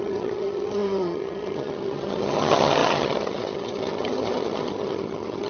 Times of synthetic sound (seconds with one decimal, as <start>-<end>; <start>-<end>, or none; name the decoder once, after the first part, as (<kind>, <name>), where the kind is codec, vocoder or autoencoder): 0.0-5.5 (vocoder, HiFi-GAN)